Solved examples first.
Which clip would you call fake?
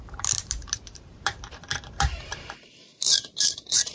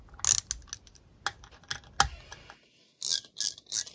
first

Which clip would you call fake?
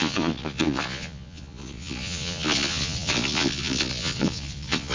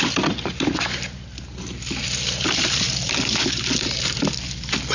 first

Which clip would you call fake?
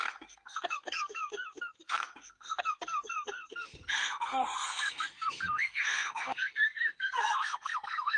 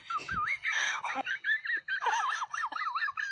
first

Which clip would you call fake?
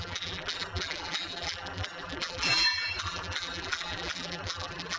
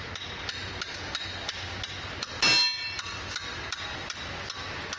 first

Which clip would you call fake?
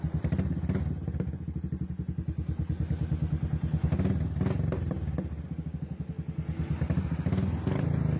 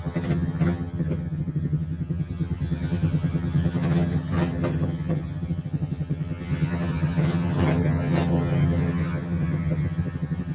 second